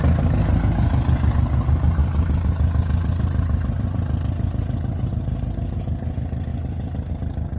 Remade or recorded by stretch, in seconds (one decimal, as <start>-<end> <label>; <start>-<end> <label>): 0.0-7.6 recorded